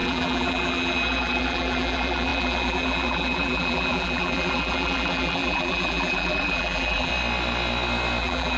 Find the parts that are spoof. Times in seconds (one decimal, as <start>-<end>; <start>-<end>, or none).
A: 0.0-7.1; 8.2-8.6